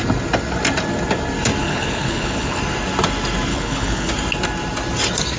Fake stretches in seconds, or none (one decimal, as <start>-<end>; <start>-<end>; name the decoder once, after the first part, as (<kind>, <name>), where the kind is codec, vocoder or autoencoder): 1.6-2.6 (codec, HILCodec); 3.5-4.1